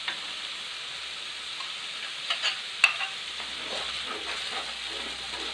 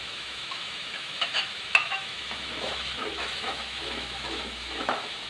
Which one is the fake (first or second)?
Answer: second